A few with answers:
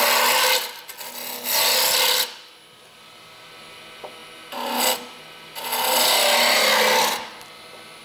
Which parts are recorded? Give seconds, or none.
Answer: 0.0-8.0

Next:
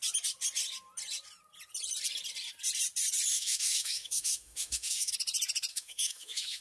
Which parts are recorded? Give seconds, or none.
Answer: 0.0-3.3; 5.1-5.7